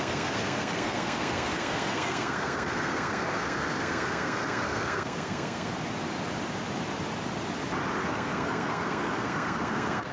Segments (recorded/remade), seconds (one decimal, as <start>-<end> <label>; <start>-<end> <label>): 0.0-5.7 remade; 5.7-8.0 recorded; 8.0-10.1 remade